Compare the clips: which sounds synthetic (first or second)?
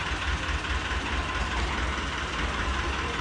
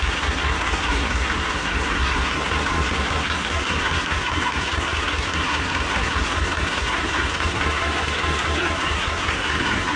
second